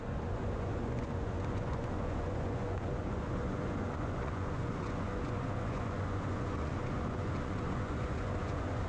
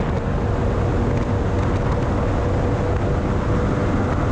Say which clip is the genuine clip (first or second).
second